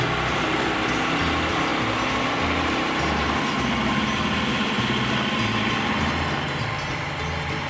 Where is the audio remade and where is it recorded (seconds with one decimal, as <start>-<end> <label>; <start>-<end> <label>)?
0.0-7.7 recorded